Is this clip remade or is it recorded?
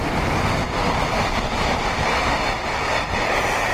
recorded